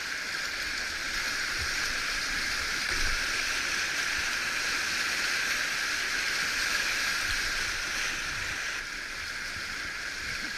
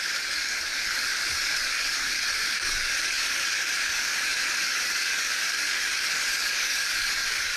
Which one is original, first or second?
first